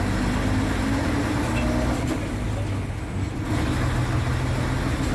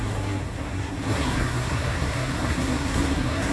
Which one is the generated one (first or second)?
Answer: second